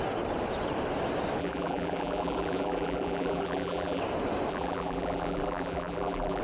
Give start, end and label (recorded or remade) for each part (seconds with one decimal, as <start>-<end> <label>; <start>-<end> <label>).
0.0-1.4 recorded; 1.4-4.0 remade; 4.0-4.5 recorded; 4.5-6.4 remade

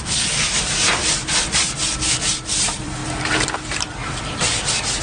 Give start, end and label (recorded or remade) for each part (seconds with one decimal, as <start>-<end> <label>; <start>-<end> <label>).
0.0-5.0 remade

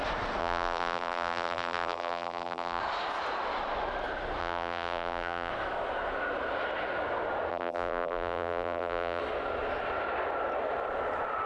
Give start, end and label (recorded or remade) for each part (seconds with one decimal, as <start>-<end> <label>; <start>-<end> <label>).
0.0-0.4 recorded; 0.4-2.8 remade; 2.8-4.4 recorded; 4.4-5.5 remade; 5.5-7.5 recorded; 7.5-9.2 remade; 9.2-11.5 recorded

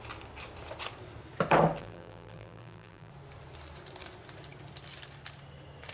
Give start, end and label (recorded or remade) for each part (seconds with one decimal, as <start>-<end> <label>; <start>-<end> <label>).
0.0-1.8 recorded; 1.8-3.1 remade; 3.1-5.9 recorded